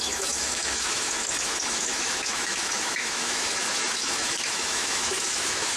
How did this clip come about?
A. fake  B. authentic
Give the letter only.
A